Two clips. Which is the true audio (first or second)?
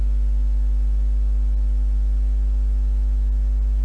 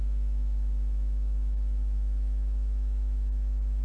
first